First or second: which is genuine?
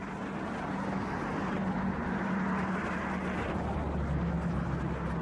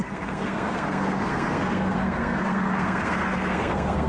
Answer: first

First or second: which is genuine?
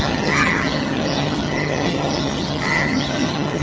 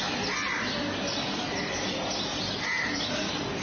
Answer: second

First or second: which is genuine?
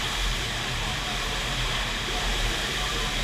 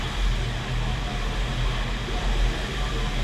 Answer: second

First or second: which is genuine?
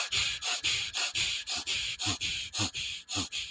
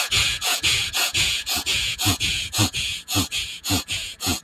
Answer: first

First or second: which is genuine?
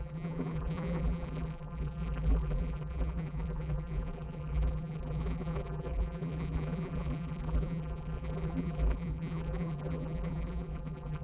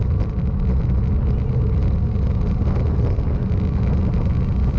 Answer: second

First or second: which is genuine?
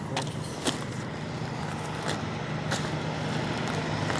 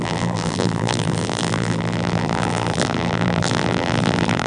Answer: first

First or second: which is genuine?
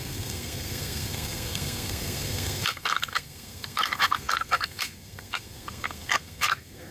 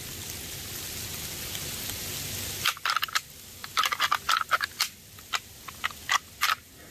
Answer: second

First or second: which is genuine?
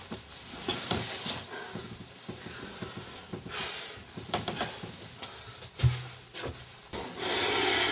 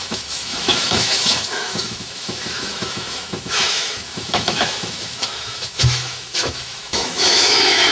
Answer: first